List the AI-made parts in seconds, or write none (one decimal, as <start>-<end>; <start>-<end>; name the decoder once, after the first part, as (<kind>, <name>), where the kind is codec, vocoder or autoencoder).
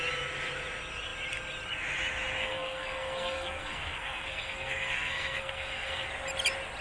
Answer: 2.4-6.1 (codec, SNAC)